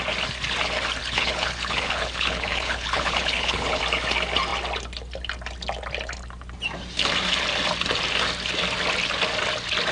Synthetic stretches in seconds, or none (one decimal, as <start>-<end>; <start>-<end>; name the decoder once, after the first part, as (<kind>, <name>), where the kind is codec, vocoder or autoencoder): 1.0-3.8 (codec, HILCodec)